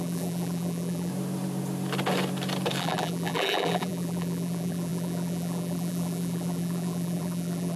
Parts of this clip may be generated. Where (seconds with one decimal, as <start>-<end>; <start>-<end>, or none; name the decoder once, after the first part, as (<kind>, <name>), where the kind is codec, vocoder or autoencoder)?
0.0-1.1 (vocoder, BigVGAN v2); 2.8-7.8